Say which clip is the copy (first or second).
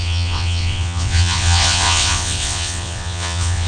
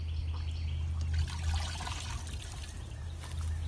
first